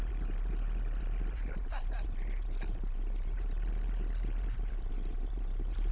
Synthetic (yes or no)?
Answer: yes